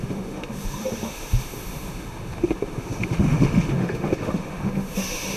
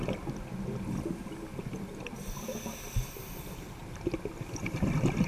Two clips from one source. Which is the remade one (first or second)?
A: first